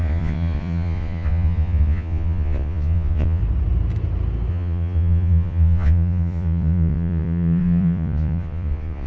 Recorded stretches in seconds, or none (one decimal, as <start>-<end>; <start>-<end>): 3.4-4.5